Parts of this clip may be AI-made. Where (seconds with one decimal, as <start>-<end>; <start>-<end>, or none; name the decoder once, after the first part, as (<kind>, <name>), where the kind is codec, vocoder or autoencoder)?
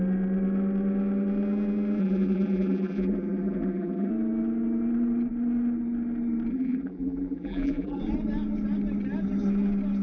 2.0-4.1 (vocoder, BigVGAN v2); 6.5-8.0